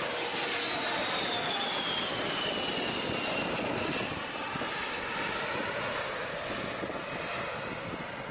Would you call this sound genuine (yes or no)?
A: yes